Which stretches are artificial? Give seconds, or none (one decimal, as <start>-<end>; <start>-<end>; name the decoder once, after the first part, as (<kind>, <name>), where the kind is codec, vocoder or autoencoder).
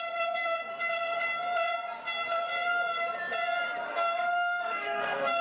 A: 0.0-0.7 (codec, SNAC); 3.9-5.4